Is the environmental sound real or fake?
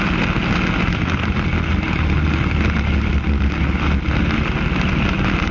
real